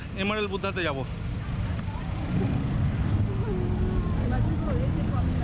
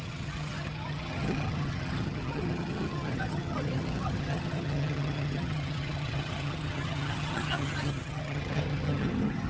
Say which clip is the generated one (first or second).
second